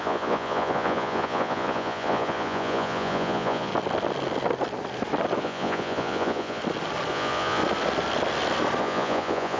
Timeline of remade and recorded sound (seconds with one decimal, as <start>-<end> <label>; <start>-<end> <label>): 0.0-3.7 remade; 3.7-5.4 recorded; 5.4-6.6 remade; 6.6-7.1 recorded; 7.1-7.6 remade; 7.6-8.8 recorded; 8.8-9.6 remade